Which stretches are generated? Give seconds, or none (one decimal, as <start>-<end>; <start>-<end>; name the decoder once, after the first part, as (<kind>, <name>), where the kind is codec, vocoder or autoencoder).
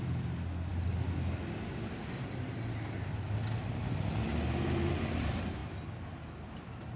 none